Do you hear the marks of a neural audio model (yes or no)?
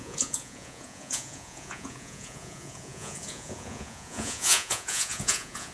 yes